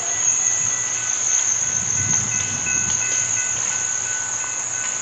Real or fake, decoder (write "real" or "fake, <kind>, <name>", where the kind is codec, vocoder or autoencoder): real